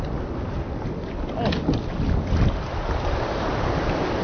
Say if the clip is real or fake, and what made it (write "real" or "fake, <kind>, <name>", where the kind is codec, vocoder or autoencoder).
real